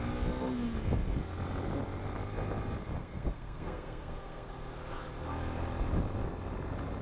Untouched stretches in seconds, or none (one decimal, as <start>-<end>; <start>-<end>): 0.0-3.0; 4.5-7.0